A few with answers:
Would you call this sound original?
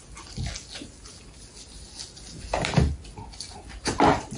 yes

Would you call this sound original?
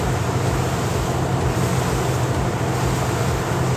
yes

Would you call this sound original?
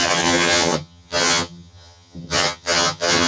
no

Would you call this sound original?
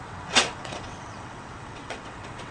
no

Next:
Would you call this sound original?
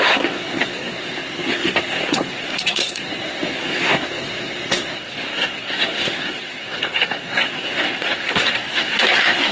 no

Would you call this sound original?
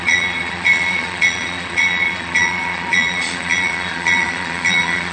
no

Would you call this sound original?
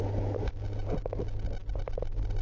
yes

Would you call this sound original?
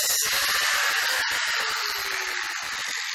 yes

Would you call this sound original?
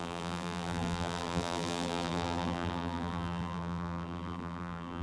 no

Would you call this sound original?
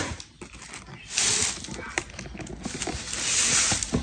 yes